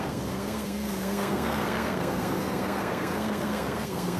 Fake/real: fake